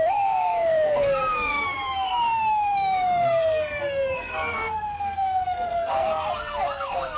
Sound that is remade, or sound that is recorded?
remade